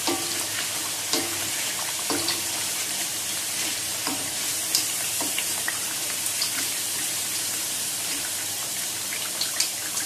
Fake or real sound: fake